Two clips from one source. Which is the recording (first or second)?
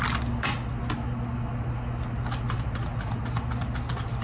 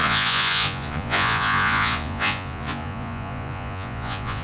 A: first